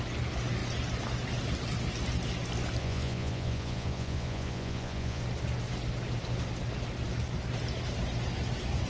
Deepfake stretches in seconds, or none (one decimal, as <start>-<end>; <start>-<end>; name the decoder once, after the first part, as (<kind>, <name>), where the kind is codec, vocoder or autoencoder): 2.8-5.2 (vocoder, Vocos)